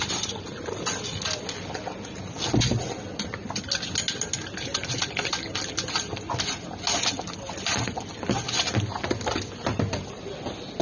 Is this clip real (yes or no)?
yes